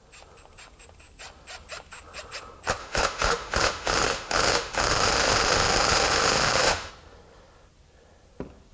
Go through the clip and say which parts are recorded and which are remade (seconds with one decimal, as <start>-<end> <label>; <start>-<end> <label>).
0.0-2.8 recorded; 2.8-6.9 remade; 6.9-8.7 recorded